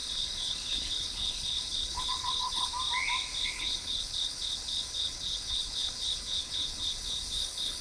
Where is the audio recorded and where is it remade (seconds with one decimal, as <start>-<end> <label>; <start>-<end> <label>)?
0.0-2.7 remade; 2.7-3.4 recorded; 3.4-7.8 remade